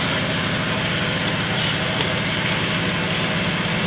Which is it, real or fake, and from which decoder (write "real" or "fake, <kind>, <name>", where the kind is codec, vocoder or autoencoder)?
real